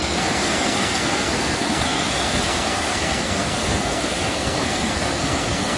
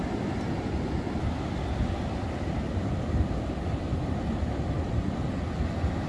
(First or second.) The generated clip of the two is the first